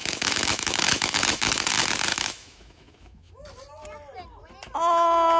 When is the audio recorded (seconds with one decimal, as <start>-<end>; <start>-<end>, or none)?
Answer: 1.7-2.1; 3.3-5.4